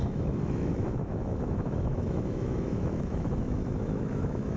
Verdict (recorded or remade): remade